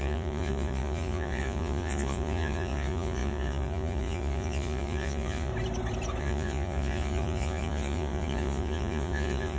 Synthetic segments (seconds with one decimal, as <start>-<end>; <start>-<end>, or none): 0.0-5.5; 6.2-9.6